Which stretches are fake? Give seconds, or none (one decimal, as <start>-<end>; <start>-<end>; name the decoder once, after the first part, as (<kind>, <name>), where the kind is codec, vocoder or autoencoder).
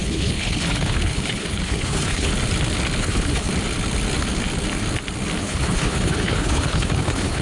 0.0-2.3 (codec, HILCodec); 3.0-3.5; 5.4-7.4